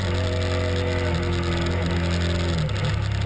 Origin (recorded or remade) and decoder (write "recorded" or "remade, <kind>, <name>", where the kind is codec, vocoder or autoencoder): recorded